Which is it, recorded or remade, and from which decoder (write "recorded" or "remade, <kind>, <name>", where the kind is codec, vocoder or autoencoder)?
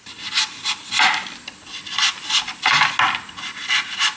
recorded